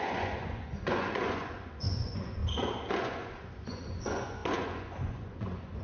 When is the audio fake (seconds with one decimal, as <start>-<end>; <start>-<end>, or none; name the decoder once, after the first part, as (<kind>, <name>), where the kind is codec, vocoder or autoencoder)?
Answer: 0.0-2.4 (vocoder, Vocos); 2.9-5.8